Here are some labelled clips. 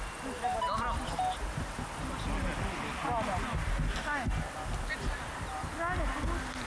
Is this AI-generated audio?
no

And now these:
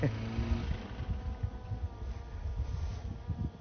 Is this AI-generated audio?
no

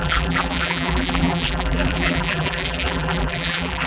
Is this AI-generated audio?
yes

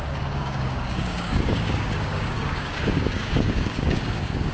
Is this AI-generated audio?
yes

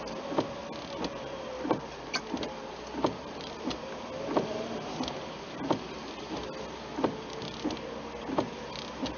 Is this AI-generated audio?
no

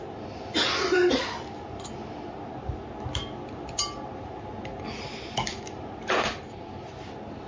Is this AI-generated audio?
no